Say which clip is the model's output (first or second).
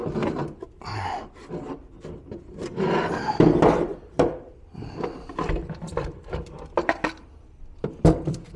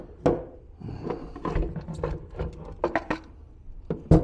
first